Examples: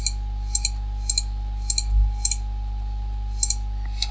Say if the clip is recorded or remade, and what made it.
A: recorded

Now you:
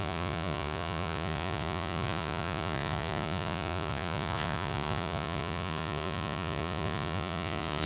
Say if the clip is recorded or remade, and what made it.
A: remade, vocoder, Vocos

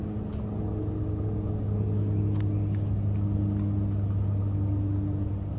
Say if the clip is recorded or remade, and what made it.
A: recorded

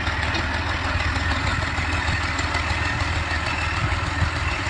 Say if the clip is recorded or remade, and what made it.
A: recorded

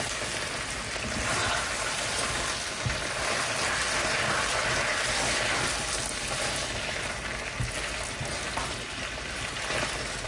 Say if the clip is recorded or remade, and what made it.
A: recorded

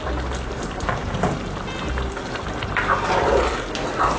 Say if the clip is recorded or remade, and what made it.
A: recorded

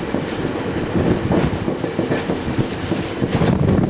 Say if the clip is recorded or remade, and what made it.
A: recorded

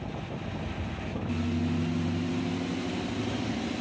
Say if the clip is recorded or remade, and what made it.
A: recorded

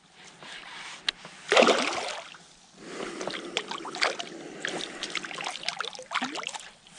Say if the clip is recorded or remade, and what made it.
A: recorded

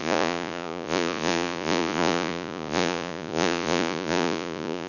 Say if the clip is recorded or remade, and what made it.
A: remade, vocoder, Vocos